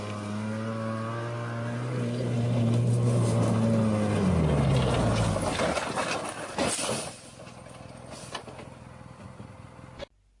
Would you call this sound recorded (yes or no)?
yes